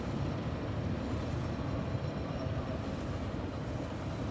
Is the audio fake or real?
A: real